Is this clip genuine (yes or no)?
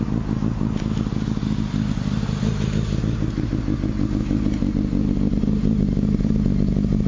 yes